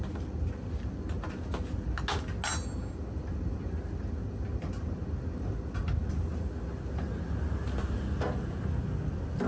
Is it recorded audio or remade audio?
recorded